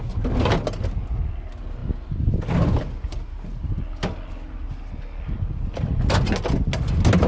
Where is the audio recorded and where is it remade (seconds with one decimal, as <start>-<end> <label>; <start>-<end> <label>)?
0.0-7.3 recorded